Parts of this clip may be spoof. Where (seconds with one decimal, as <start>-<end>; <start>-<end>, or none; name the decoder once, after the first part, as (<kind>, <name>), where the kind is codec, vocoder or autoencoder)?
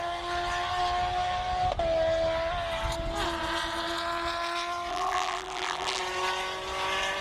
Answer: 4.9-6.0 (vocoder, BigVGAN v2)